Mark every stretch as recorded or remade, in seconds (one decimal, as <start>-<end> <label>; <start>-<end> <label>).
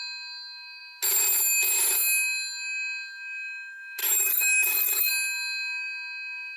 0.0-4.0 recorded; 4.0-5.1 remade; 5.1-6.6 recorded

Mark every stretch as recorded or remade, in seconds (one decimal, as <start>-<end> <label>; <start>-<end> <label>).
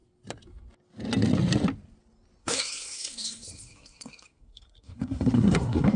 0.0-2.4 recorded; 2.4-6.0 remade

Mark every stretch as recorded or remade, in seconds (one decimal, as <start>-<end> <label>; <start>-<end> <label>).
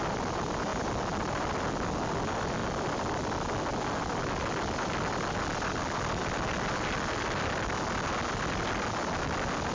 0.0-9.7 recorded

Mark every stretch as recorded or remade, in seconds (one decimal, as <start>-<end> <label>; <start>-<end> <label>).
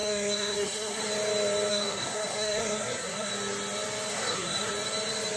0.0-1.0 remade; 1.0-1.7 recorded; 1.7-3.3 remade; 3.3-4.1 recorded; 4.1-4.7 remade; 4.7-5.4 recorded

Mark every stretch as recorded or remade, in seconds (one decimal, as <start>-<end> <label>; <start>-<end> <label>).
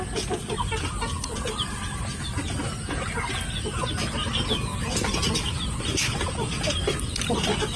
0.0-7.8 recorded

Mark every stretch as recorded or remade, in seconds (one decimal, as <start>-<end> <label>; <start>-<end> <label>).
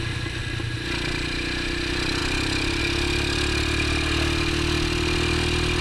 0.0-2.2 recorded; 2.2-2.8 remade; 2.8-5.8 recorded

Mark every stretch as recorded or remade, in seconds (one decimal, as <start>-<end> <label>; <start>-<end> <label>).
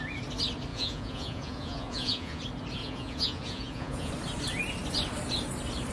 0.0-0.7 recorded; 0.7-2.4 remade; 2.4-2.8 recorded; 2.8-4.1 remade; 4.1-5.9 recorded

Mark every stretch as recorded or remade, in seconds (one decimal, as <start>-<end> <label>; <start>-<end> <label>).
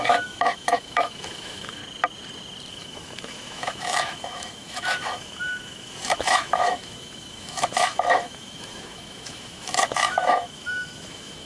0.0-1.8 remade; 1.8-2.7 recorded; 2.7-11.4 remade